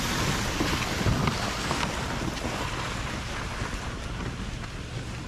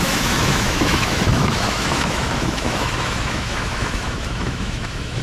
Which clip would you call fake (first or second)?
second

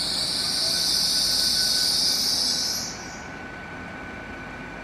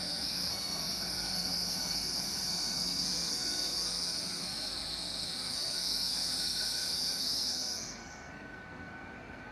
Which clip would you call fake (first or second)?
second